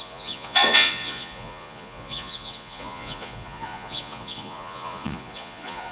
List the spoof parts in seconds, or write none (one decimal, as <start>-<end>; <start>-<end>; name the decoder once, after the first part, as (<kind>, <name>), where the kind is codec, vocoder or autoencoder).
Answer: 0.0-5.9 (vocoder, Vocos)

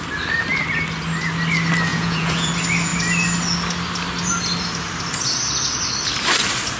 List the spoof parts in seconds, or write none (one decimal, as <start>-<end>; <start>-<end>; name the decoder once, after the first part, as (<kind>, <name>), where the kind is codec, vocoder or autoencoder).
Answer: 1.9-2.5 (vocoder, Vocos)

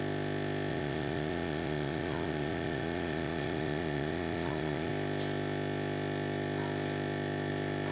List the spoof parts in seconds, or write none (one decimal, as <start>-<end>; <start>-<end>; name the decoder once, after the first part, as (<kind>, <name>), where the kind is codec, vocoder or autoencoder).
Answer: 0.7-4.9 (vocoder, Vocos)

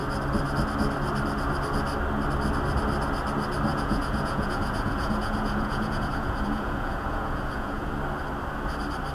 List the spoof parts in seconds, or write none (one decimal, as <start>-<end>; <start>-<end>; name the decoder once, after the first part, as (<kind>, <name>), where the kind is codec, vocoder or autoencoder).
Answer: 3.7-7.9 (vocoder, Vocos)

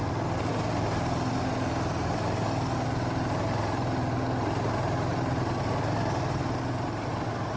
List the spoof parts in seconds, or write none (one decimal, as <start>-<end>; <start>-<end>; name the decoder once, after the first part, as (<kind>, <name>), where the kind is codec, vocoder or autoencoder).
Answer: none

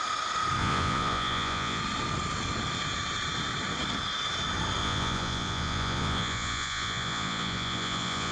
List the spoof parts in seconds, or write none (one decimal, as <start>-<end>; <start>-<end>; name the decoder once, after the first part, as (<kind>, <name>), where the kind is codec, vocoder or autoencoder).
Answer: 0.6-1.8 (vocoder, Vocos); 4.8-8.3

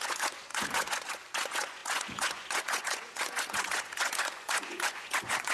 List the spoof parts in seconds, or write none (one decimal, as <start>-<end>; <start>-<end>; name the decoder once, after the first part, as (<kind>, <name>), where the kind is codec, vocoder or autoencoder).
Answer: 0.0-5.5 (vocoder, Vocos)